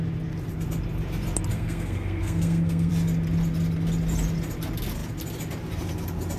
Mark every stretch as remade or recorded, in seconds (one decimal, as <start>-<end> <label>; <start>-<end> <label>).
0.0-1.5 recorded; 1.5-2.9 remade; 2.9-6.4 recorded